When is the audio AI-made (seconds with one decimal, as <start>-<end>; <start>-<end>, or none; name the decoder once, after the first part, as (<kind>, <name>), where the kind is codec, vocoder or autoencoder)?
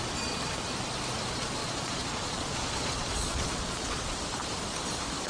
1.6-4.0 (vocoder, Vocos)